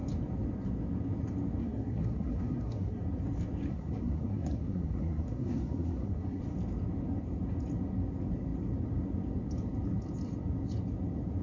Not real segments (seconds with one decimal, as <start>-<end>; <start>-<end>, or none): 1.6-3.0; 3.7-6.4